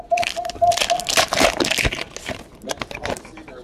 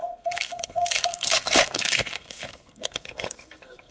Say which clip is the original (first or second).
first